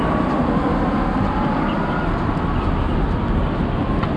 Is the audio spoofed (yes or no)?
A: no